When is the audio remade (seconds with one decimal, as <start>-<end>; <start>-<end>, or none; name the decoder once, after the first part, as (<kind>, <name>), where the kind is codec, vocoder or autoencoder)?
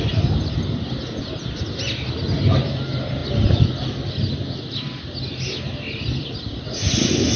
none